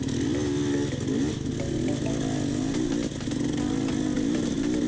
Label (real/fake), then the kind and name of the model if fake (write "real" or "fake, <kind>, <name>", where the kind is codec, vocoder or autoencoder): real